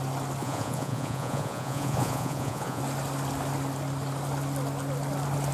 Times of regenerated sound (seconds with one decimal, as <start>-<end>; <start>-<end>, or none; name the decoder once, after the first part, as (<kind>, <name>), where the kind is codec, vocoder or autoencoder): 0.4-2.8 (vocoder, Vocos)